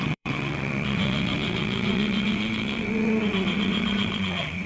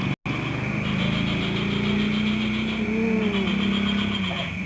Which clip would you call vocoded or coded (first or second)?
first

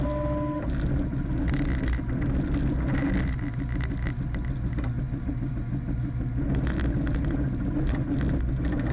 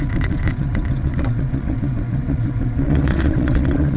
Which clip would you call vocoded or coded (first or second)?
second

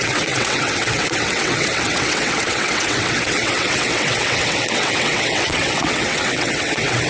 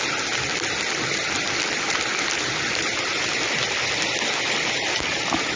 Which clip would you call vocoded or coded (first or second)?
first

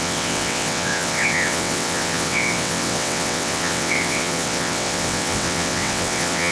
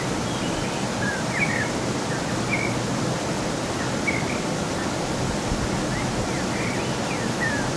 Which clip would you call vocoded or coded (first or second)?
first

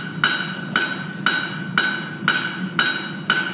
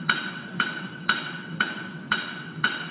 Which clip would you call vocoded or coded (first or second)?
second